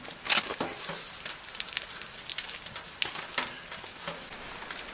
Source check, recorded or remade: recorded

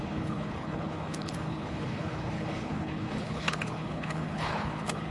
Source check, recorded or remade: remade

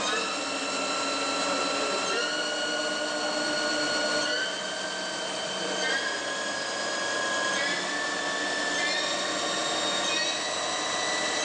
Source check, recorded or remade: recorded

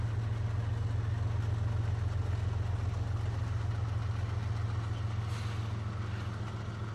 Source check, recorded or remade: recorded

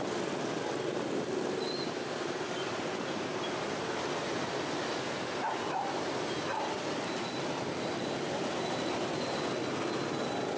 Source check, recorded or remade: recorded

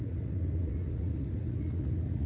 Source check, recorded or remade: remade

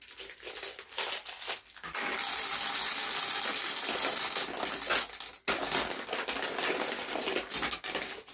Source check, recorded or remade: recorded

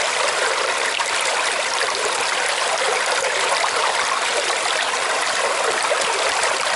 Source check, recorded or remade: remade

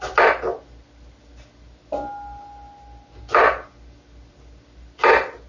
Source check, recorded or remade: recorded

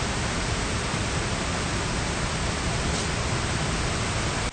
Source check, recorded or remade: recorded